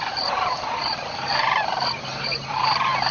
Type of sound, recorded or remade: remade